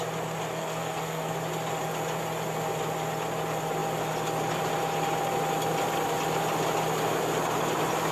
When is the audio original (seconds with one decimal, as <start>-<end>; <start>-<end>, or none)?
0.0-0.5; 1.3-8.1